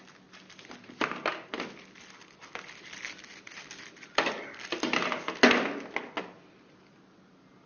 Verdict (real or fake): real